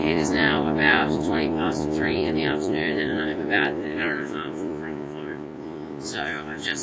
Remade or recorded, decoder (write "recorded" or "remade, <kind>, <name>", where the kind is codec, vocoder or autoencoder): remade, vocoder, Vocos